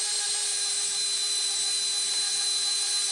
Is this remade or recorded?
recorded